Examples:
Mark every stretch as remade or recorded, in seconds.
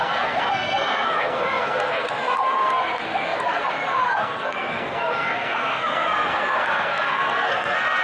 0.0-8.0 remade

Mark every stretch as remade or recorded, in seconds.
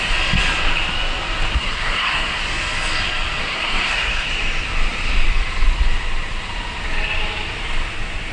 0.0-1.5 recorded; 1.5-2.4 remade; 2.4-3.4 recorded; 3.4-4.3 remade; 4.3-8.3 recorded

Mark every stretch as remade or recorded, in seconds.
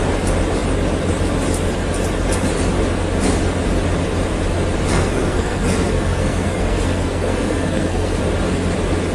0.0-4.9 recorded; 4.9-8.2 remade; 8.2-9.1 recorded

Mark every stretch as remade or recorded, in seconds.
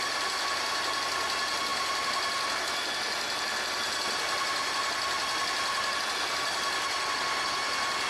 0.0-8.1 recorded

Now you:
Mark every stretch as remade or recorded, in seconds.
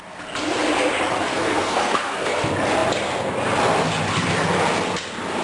0.0-1.3 recorded; 1.3-2.3 remade; 2.3-5.4 recorded